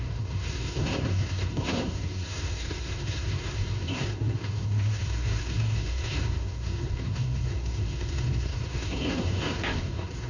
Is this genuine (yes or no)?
no